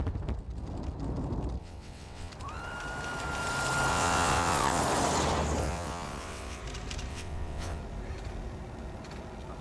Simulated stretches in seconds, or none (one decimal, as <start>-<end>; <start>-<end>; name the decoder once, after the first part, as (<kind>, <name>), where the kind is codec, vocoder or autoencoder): 1.6-2.3 (vocoder, WaveNeXt); 3.9-4.8; 5.6-6.6; 7.1-7.8